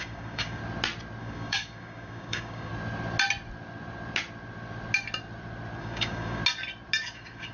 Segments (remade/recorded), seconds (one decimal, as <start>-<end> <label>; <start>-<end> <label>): 0.0-0.6 remade; 0.6-1.2 recorded; 1.2-2.7 remade; 2.7-5.8 recorded; 5.8-6.4 remade; 6.4-7.1 recorded; 7.1-7.5 remade